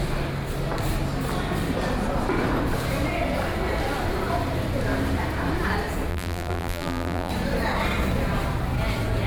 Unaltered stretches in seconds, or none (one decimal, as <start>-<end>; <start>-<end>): 0.0-6.1; 7.3-9.3